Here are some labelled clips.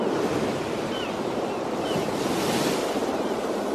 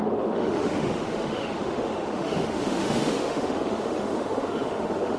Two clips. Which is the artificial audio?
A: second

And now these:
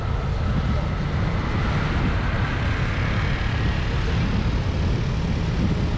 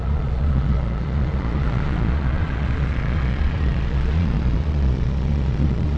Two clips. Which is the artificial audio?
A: second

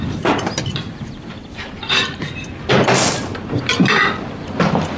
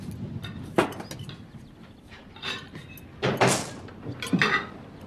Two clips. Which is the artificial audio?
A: first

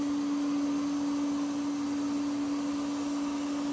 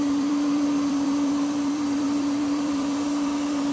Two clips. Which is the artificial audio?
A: second